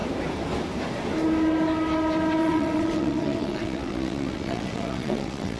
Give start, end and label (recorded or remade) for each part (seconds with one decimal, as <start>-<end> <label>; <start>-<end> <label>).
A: 0.0-2.4 recorded; 2.4-5.6 remade